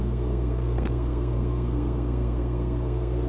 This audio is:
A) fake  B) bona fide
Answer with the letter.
A